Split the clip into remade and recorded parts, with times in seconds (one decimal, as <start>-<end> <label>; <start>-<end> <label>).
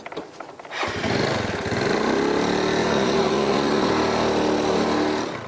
0.0-2.8 recorded; 2.8-3.9 remade; 3.9-5.5 recorded